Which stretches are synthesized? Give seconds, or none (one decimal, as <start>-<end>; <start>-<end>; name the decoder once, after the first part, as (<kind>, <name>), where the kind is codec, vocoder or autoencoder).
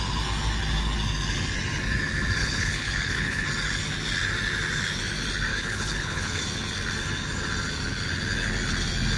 2.4-3.5 (codec, HILCodec); 5.5-6.4